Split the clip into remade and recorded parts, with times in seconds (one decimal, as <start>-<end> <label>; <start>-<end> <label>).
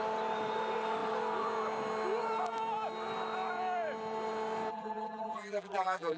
0.0-4.7 recorded; 4.7-6.2 remade